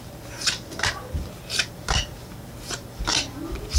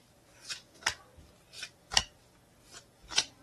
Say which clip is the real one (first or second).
second